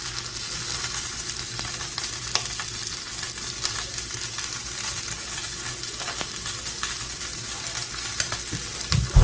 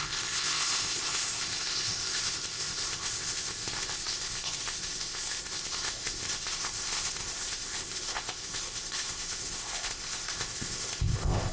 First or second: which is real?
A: first